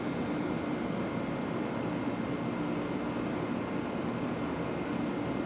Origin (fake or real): real